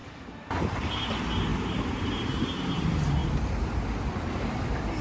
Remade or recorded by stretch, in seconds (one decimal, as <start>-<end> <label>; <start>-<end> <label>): 0.0-1.1 remade; 1.1-1.5 recorded; 1.5-2.1 remade; 2.1-3.2 recorded; 3.2-4.1 remade; 4.1-5.0 recorded